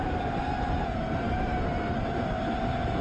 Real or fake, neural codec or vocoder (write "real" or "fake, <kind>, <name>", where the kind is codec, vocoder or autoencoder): fake, vocoder, BigVGAN v2